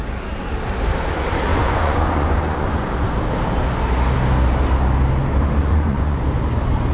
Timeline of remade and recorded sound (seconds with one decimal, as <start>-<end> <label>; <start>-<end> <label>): 0.0-1.5 recorded; 1.5-2.9 remade; 2.9-5.6 recorded; 5.6-6.2 remade; 6.2-6.9 recorded